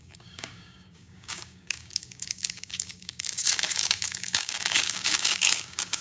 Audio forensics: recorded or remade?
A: remade